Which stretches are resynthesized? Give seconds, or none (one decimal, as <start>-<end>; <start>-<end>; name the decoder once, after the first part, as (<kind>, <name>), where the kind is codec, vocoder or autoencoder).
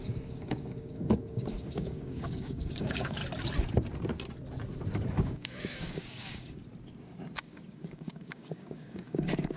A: 0.0-3.2 (codec, DAC); 5.2-6.6; 7.4-9.6